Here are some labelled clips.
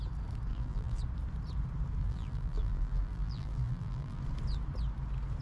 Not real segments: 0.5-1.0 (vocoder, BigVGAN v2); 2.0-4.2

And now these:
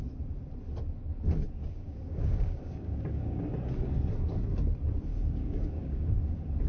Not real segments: 1.6-3.4 (codec, DAC); 5.1-6.2